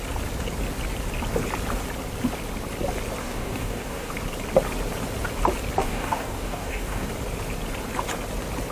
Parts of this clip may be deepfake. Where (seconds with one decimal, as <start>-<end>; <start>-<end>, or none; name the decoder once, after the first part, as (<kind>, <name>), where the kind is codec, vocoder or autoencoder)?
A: 3.2-4.1 (codec, DAC); 5.8-7.1